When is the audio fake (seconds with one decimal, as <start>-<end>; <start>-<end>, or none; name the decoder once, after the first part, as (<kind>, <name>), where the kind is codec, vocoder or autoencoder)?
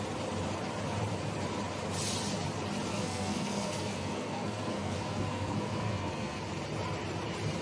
2.9-6.4 (codec, SNAC)